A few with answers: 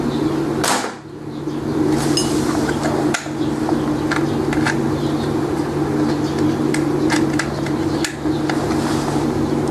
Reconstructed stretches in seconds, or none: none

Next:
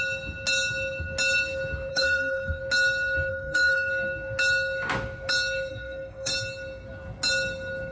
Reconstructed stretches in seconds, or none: 1.9-2.6 (codec, SNAC); 3.3-3.9; 5.7-6.3

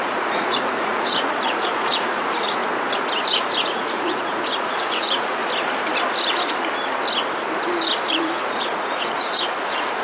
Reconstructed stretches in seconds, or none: 0.0-2.6 (vocoder, Vocos); 3.3-5.4; 8.1-10.0

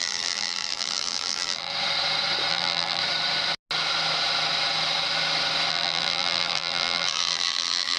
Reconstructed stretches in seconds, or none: 0.0-1.7 (vocoder, BigVGAN v2); 2.5-3.0; 5.7-8.0

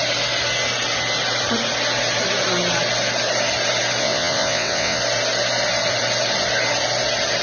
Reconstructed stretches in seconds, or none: 4.0-5.0 (vocoder, WaveNeXt)